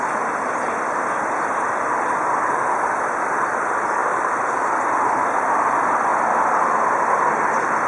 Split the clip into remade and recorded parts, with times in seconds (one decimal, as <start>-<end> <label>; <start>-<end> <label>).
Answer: 0.0-7.9 recorded